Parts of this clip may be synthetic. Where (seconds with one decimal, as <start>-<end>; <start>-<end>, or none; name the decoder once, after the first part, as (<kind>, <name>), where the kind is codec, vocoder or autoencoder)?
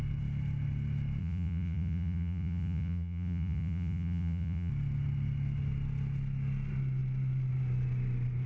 1.2-4.7 (vocoder, Vocos)